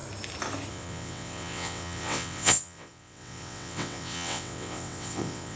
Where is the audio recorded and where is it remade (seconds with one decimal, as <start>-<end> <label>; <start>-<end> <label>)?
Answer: 0.0-0.7 recorded; 0.7-5.6 remade